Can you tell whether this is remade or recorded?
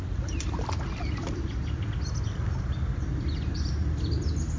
recorded